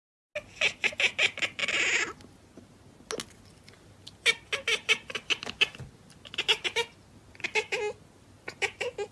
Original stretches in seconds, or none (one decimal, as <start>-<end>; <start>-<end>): 0.0-9.1